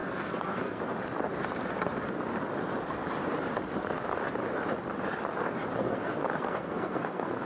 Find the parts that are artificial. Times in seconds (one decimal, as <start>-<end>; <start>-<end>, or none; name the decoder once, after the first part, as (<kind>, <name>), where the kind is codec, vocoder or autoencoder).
0.0-0.8 (codec, SNAC); 5.8-7.4